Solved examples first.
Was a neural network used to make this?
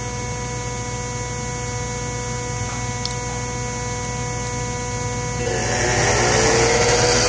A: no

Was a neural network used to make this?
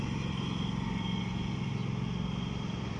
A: no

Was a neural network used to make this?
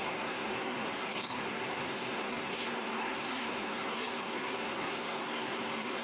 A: yes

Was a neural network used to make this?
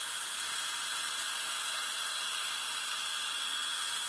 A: no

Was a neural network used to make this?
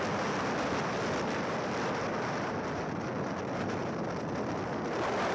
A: no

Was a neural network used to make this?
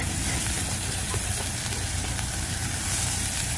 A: no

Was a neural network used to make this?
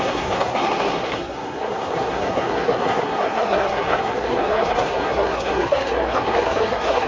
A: yes